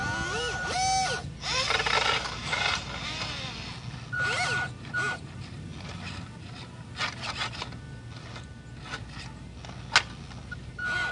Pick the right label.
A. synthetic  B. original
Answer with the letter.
B